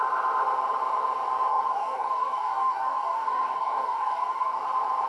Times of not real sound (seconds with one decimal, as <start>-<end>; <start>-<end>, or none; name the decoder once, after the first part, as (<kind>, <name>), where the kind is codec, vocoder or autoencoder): 1.5-4.6 (codec, DAC)